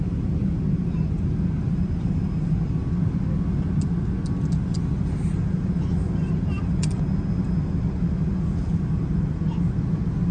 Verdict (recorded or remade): recorded